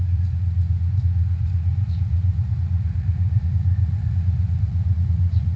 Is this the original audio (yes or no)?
no